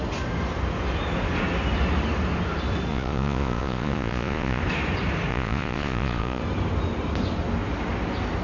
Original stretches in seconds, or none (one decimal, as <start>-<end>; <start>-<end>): 0.0-2.9; 4.6-5.3; 6.4-8.4